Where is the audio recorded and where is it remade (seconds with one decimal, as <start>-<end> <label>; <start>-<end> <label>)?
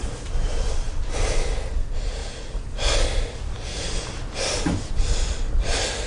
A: 0.0-6.1 recorded